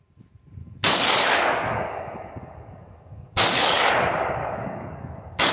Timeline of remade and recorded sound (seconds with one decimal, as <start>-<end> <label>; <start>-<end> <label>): 0.0-0.6 recorded; 0.6-3.9 remade; 3.9-4.4 recorded; 4.4-5.5 remade

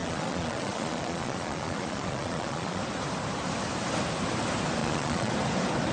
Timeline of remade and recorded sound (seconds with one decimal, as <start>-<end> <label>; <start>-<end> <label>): 0.0-2.8 remade; 2.8-4.8 recorded; 4.8-5.3 remade; 5.3-5.9 recorded

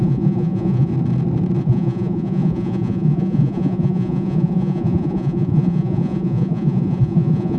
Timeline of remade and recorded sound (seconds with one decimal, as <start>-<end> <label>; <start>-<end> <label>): 0.0-0.9 remade; 0.9-1.6 recorded; 1.6-7.6 remade

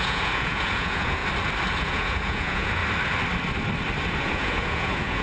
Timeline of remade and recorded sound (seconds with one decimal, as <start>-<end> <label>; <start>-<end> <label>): 0.0-1.2 remade; 1.2-1.8 recorded; 1.8-2.8 remade; 2.8-4.2 recorded; 4.2-5.2 remade